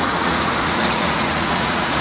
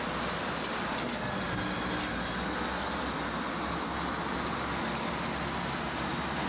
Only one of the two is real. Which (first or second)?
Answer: second